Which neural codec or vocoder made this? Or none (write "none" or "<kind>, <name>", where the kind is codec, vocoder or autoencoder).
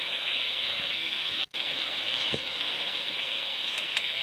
codec, SNAC